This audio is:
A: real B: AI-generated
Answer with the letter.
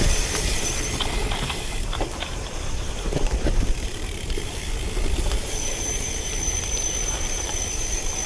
B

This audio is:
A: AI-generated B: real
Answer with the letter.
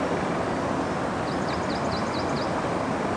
B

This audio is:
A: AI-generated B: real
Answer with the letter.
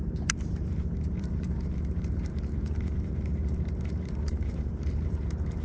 A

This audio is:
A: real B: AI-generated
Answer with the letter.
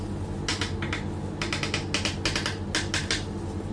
A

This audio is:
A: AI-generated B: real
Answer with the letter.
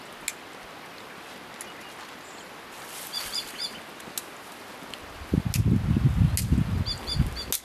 B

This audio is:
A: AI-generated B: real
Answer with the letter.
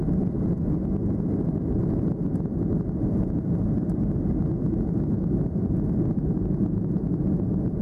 B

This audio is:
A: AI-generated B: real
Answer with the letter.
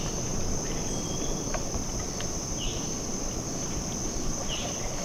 A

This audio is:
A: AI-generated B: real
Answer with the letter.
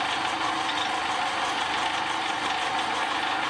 B